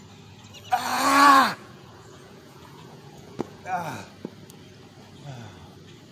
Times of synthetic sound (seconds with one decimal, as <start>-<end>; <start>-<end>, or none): 0.9-3.6